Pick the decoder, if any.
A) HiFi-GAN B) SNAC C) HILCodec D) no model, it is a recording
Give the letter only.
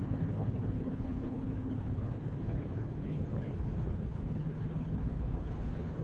C